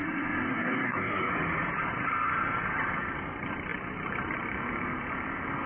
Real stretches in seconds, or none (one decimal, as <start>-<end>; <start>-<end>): 1.3-5.7